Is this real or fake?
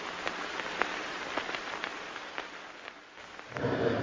real